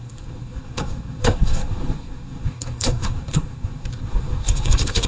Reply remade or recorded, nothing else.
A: remade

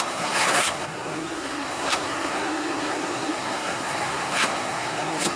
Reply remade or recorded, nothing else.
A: remade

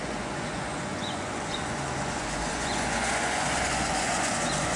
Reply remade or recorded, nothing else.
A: remade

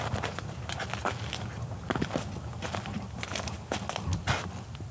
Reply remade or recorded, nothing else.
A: recorded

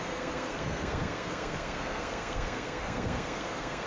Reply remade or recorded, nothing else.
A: remade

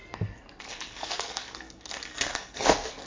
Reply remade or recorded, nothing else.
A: remade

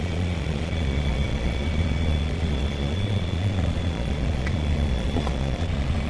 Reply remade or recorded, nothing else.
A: remade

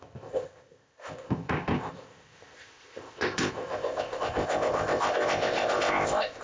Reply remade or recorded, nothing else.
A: remade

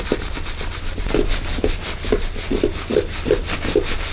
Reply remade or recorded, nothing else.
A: recorded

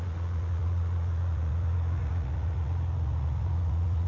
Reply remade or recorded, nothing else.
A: remade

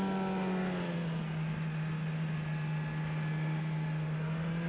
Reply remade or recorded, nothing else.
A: recorded